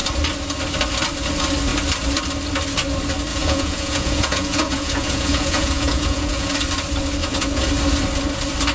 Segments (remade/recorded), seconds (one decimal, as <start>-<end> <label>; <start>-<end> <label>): 0.0-3.3 recorded; 3.3-6.5 remade; 6.5-7.2 recorded; 7.2-7.7 remade; 7.7-8.7 recorded